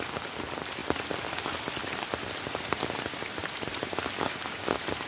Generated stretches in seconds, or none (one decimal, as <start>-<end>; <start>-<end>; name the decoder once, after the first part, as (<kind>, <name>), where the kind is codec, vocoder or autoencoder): 1.8-3.0 (vocoder, BigVGAN v2); 3.4-3.9